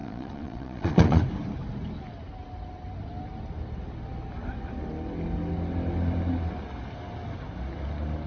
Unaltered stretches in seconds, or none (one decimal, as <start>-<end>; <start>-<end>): 1.2-8.3